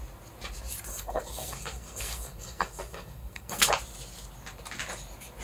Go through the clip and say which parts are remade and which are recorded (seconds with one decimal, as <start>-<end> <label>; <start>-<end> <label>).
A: 0.0-0.9 recorded; 0.9-3.7 remade; 3.7-5.4 recorded